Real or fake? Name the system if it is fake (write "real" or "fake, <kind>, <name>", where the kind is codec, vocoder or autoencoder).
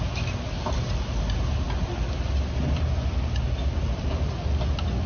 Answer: real